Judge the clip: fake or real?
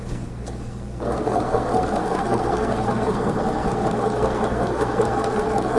fake